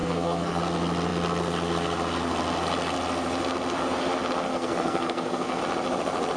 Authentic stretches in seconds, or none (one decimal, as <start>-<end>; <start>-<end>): 0.6-4.5; 5.6-6.4